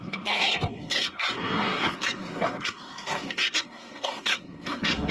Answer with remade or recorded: remade